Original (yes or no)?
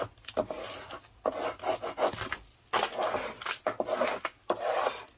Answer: yes